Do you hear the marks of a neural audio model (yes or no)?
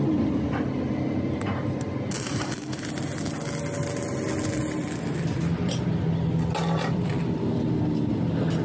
no